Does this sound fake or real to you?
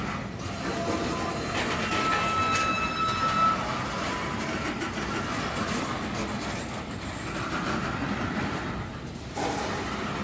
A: real